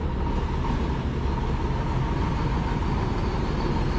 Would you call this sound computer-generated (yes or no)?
no